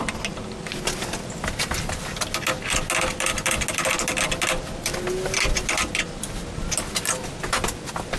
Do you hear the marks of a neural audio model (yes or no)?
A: no